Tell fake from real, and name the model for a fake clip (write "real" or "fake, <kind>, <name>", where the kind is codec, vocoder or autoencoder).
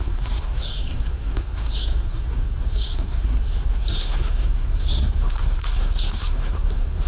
fake, codec, SNAC